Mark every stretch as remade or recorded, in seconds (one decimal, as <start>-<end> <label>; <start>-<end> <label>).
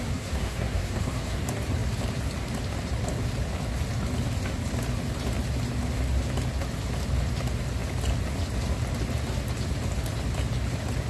0.0-1.4 remade; 1.4-11.1 recorded